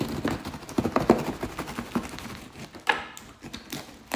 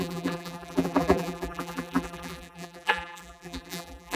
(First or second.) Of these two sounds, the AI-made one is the second